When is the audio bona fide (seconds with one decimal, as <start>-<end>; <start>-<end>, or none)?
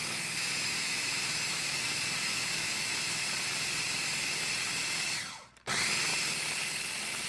3.2-7.3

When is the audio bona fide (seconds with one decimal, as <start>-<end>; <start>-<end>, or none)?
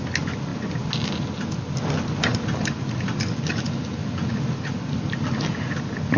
0.0-6.2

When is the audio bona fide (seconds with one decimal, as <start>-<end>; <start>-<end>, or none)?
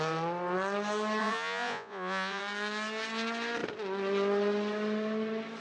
0.0-1.2; 2.4-5.6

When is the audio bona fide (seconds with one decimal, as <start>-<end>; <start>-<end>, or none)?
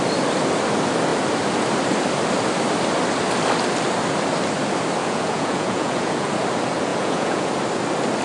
0.0-5.0; 6.3-6.9; 7.5-8.2